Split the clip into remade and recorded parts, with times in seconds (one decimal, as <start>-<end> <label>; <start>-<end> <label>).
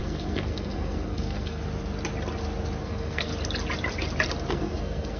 0.0-1.6 remade; 1.6-2.8 recorded; 2.8-3.3 remade; 3.3-4.5 recorded; 4.5-5.2 remade